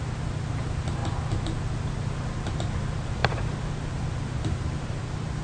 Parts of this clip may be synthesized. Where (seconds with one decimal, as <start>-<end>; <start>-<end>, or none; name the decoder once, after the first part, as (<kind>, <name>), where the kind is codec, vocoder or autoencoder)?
0.0-1.0 (vocoder, BigVGAN v2); 1.9-5.4